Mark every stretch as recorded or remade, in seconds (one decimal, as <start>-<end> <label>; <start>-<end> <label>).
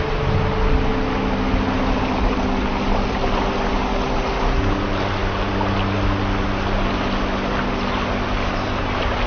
0.0-9.3 recorded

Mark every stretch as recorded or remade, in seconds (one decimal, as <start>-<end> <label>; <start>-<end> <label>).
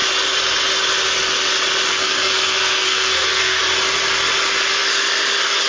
0.0-1.9 recorded; 1.9-3.6 remade; 3.6-5.7 recorded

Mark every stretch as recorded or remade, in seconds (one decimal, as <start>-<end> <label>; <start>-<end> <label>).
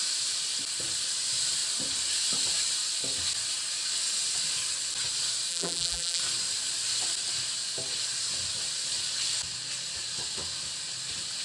0.0-5.5 recorded; 5.5-6.2 remade; 6.2-11.4 recorded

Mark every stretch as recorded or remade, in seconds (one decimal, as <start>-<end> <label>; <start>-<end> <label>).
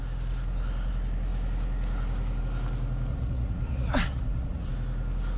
0.0-3.1 recorded; 3.1-4.7 remade; 4.7-5.4 recorded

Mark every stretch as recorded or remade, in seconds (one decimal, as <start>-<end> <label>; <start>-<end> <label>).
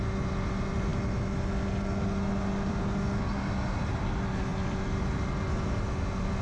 0.0-6.4 recorded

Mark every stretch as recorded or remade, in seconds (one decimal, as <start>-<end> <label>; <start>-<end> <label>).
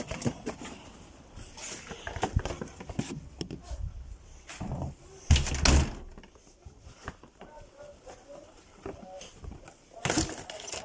0.0-10.8 recorded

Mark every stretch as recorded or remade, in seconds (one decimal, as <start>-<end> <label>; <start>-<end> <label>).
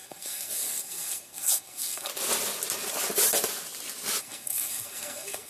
0.0-2.1 remade; 2.1-4.2 recorded; 4.2-5.5 remade